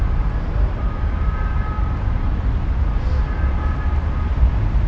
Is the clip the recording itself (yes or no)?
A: yes